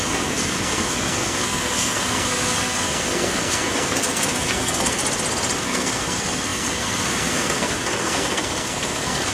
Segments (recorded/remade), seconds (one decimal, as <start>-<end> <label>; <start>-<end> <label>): 0.0-5.0 remade; 5.0-5.6 recorded; 5.6-9.3 remade